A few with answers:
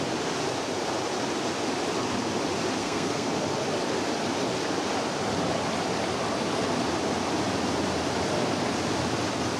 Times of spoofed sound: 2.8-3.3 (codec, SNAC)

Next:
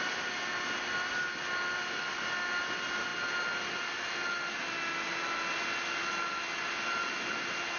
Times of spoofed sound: none